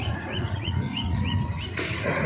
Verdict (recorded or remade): remade